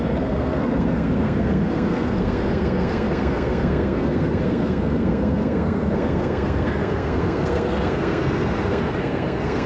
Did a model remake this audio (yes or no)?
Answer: yes